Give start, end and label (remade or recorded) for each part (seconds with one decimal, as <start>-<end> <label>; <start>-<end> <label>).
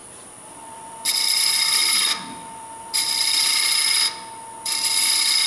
0.0-1.1 remade; 1.1-1.8 recorded; 1.8-4.0 remade; 4.0-5.5 recorded